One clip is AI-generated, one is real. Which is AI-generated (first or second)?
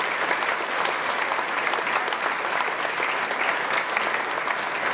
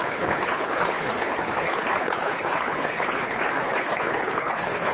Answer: second